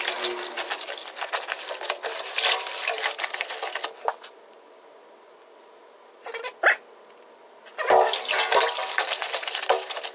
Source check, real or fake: real